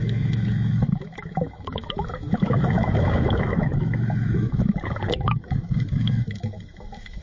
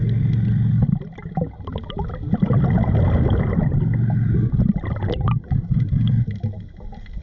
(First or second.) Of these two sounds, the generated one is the first